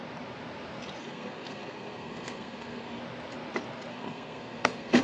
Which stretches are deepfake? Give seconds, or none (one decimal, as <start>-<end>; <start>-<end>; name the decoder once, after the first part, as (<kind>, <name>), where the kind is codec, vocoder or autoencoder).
1.0-3.0 (codec, SNAC); 3.9-5.0